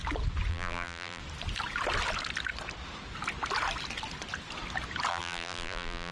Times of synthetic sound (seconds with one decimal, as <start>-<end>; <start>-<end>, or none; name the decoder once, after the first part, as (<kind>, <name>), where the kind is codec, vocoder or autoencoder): 0.5-1.2 (vocoder, BigVGAN v2); 5.1-6.1